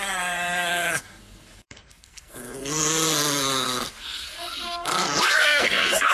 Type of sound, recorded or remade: remade